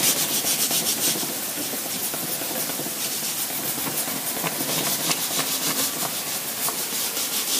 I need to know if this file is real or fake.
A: real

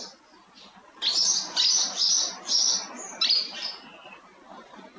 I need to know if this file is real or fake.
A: real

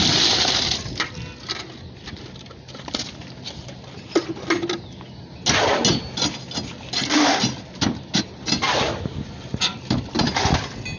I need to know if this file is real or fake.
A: real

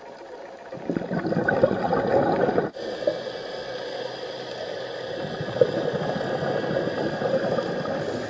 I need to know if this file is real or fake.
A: real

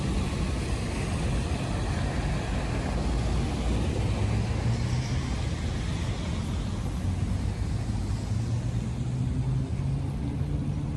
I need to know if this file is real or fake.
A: real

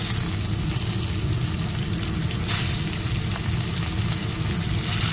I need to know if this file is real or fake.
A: real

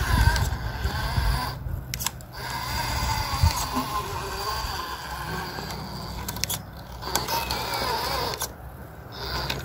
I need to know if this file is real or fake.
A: real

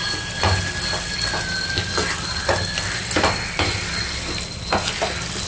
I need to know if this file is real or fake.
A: real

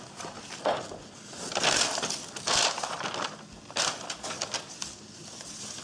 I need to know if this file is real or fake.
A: real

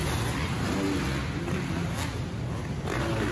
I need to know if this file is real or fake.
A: real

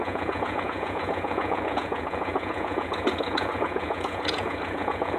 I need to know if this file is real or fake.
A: fake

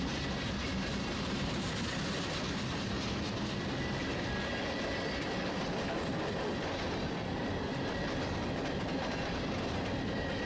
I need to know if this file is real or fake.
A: real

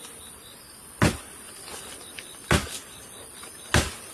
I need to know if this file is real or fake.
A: real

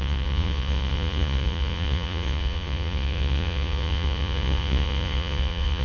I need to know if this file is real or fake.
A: fake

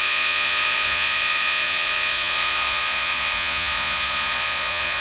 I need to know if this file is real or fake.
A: fake